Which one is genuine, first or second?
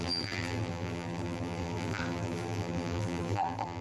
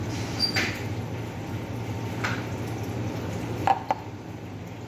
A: second